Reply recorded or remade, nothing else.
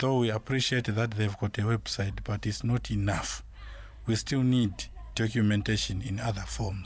remade